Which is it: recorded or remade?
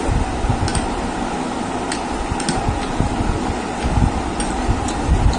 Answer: recorded